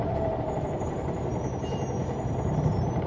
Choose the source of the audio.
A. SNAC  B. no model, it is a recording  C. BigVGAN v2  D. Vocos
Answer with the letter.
C